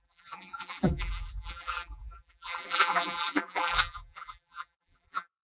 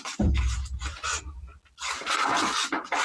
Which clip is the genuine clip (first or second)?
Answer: second